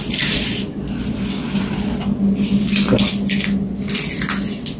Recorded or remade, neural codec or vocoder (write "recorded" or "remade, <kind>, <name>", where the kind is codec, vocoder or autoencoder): recorded